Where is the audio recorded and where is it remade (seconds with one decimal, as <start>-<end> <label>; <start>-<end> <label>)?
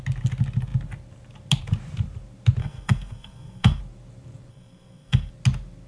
0.0-2.6 recorded; 2.6-3.8 remade; 3.8-4.5 recorded; 4.5-5.3 remade; 5.3-5.9 recorded